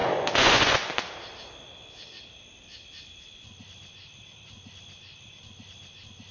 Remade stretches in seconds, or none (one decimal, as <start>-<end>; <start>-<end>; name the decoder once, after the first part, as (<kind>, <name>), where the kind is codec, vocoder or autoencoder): 0.0-0.9 (vocoder, Vocos)